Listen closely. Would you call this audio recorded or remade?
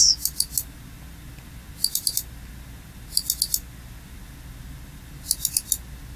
recorded